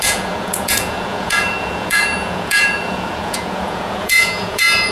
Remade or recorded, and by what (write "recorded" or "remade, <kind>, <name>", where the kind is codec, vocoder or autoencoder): remade, vocoder, Vocos